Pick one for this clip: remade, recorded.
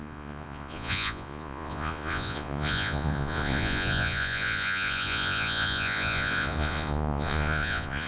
remade